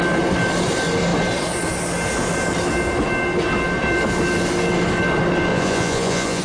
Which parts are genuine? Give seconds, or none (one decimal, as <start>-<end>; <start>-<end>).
0.0-5.5